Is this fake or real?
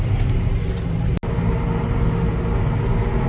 real